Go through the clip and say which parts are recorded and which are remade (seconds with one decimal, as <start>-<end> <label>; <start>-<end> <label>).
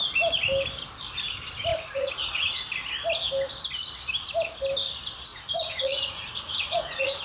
0.0-1.7 recorded; 1.7-2.6 remade; 2.6-5.3 recorded; 5.3-7.2 remade